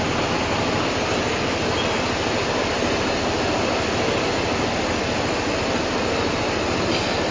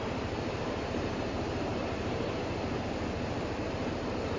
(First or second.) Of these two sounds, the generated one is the second